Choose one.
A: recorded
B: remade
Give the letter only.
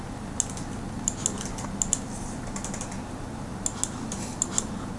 A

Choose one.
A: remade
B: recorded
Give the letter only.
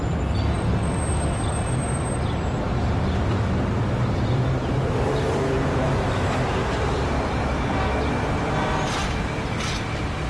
B